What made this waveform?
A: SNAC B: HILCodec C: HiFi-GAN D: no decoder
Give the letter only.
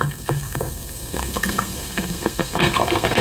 A